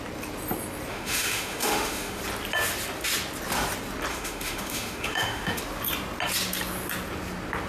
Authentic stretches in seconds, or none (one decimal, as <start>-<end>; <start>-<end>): 0.0-0.9; 2.2-4.1; 5.6-7.7